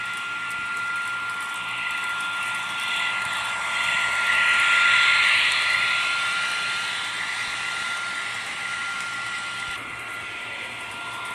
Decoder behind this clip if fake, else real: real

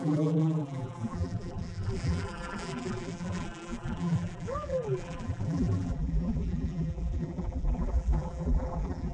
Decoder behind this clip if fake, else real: fake, vocoder, BigVGAN v2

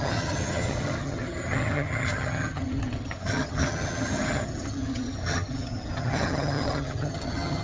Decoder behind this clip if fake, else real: fake, vocoder, HiFi-GAN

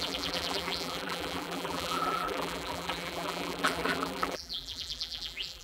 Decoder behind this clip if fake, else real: fake, vocoder, BigVGAN v2